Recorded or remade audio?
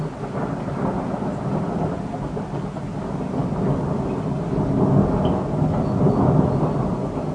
recorded